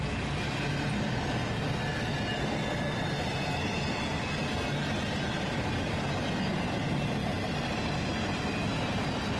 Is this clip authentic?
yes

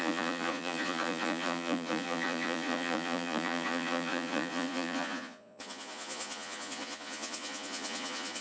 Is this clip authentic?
no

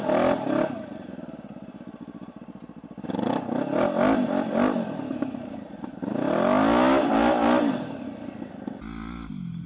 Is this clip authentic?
yes